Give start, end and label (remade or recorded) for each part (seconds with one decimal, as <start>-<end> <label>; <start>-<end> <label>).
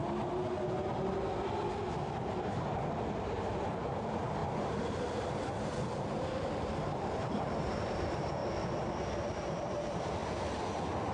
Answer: 0.0-3.2 recorded; 3.2-8.4 remade; 8.4-9.2 recorded; 9.2-10.2 remade; 10.2-10.7 recorded; 10.7-11.1 remade